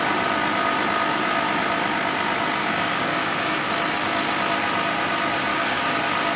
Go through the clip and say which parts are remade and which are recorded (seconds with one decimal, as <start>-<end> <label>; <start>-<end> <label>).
0.0-2.6 recorded; 2.6-3.7 remade; 3.7-5.5 recorded; 5.5-6.0 remade; 6.0-6.4 recorded